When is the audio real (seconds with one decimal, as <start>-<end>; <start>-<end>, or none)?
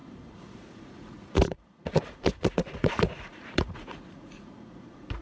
none